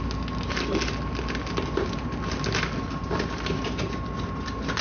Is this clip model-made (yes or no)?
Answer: no